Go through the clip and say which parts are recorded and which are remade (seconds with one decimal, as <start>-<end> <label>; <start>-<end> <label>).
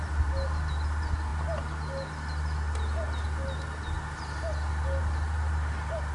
0.0-6.1 recorded